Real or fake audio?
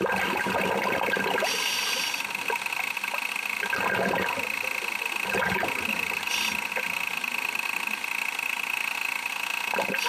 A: real